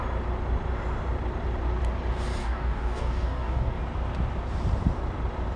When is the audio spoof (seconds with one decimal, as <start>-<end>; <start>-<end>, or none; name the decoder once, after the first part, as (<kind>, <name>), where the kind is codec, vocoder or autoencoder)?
2.4-3.8 (codec, DAC)